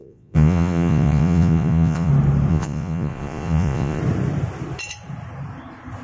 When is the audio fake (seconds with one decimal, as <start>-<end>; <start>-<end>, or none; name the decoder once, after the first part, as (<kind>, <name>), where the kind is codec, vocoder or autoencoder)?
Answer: 0.0-2.1 (vocoder, Vocos); 2.5-4.0